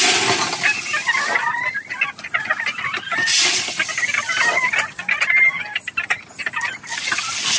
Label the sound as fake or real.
real